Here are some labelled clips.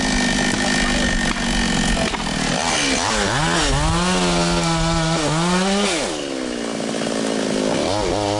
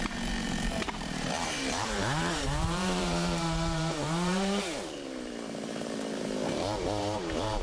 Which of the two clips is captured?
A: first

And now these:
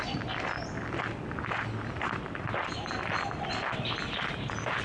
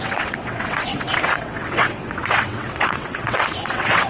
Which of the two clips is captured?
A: first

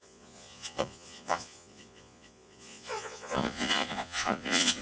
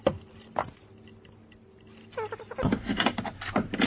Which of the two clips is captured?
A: second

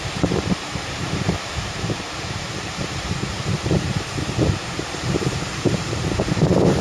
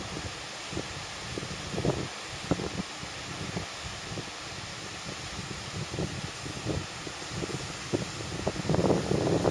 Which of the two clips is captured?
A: second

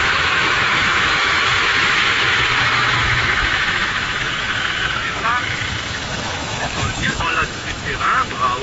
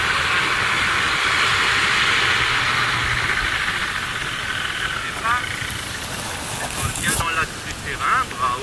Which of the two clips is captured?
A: second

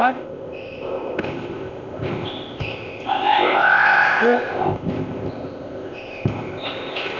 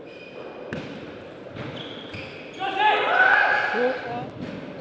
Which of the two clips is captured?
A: second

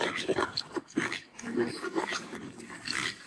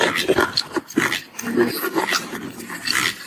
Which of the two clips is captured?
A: second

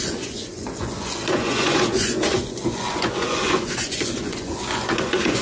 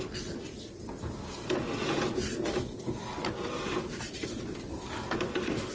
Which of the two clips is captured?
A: second